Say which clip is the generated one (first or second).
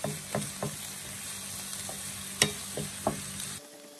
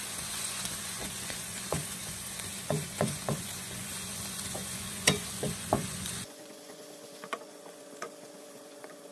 second